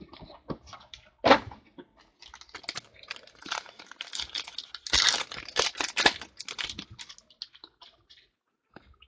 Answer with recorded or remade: recorded